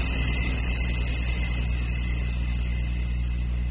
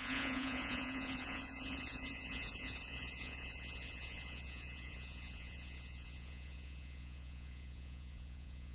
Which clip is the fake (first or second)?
second